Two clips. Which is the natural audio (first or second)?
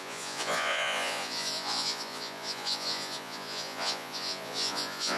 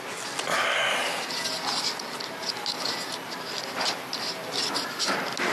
second